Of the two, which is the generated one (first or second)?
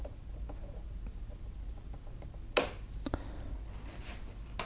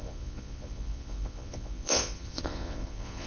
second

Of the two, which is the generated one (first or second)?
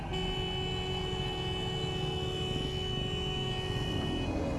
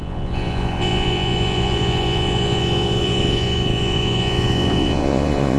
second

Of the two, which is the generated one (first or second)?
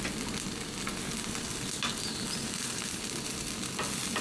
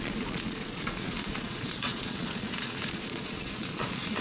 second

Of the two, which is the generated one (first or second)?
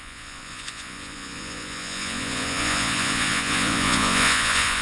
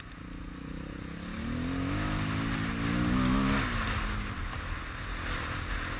first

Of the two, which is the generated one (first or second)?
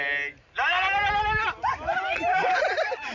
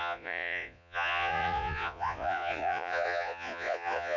second